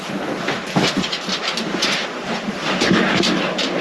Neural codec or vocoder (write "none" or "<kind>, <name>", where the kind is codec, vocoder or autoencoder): none